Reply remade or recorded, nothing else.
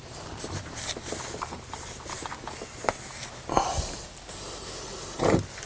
recorded